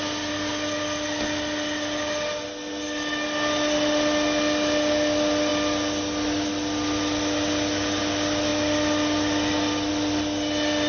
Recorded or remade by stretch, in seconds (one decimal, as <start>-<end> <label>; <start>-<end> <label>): 0.0-10.9 recorded